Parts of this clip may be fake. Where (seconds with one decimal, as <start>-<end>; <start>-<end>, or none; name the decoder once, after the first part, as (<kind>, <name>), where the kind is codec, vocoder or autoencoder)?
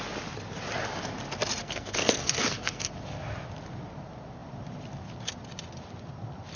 1.6-2.9 (codec, SNAC)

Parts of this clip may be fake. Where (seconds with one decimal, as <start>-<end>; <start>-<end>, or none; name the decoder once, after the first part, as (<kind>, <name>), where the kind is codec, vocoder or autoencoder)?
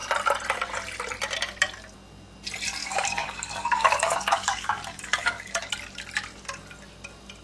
2.8-5.7 (codec, DAC)